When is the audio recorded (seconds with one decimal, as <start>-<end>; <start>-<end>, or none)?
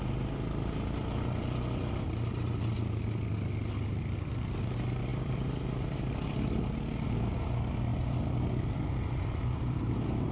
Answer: 0.0-5.1; 7.3-7.9